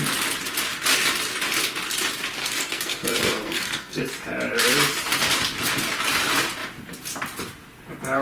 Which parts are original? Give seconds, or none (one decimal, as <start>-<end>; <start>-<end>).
0.0-2.4; 4.0-8.2